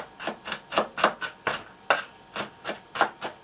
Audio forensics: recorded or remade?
recorded